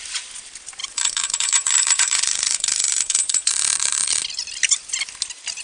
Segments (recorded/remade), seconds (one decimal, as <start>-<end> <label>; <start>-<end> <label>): 0.0-0.8 recorded; 0.8-4.2 remade; 4.2-5.6 recorded